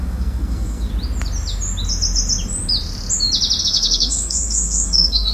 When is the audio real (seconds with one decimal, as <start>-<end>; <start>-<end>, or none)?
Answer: 0.9-3.6

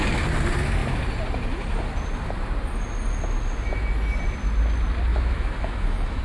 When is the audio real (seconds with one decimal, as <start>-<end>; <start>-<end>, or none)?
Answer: 0.0-5.1

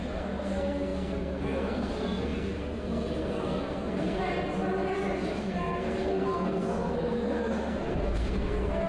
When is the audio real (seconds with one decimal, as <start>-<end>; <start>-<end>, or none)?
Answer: 4.3-5.4

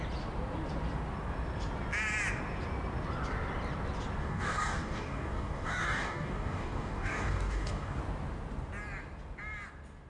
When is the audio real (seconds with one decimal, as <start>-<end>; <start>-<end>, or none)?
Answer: 0.0-4.2; 8.0-10.1

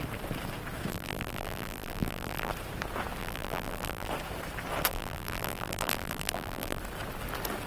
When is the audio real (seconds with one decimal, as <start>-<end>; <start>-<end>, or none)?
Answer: 0.0-0.9; 2.5-3.2; 4.1-4.9; 6.8-7.7

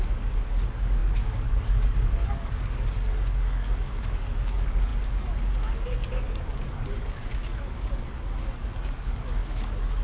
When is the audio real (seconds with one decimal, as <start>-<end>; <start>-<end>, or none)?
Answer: none

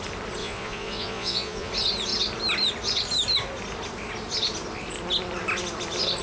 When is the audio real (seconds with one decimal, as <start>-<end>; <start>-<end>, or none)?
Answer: 0.0-0.4; 1.7-6.2